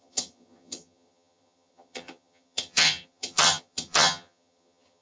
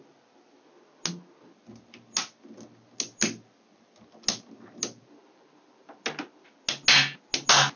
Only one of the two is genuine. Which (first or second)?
second